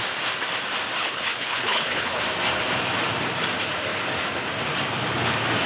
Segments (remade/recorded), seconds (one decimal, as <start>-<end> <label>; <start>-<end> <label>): 0.0-1.0 recorded; 1.0-2.2 remade; 2.2-5.7 recorded